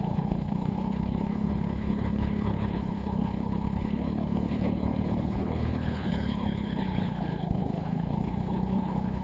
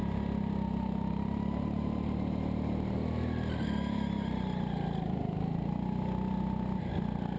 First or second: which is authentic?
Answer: second